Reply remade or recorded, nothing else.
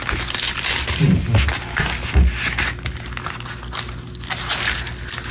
recorded